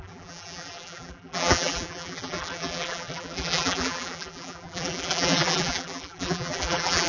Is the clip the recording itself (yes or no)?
no